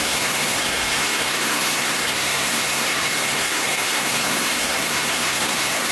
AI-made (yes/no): yes